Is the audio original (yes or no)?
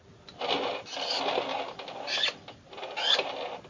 yes